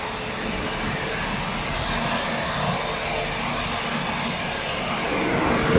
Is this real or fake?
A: real